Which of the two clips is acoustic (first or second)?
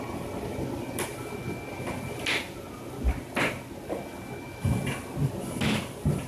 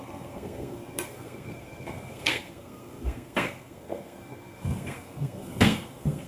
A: first